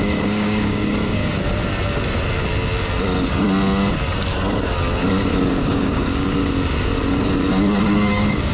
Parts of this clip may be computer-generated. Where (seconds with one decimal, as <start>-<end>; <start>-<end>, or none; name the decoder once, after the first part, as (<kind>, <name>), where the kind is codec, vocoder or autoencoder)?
0.0-1.2 (codec, DAC); 5.5-6.4; 7.8-8.5